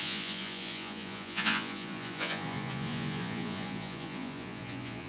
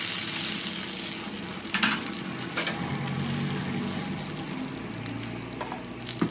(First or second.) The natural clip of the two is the second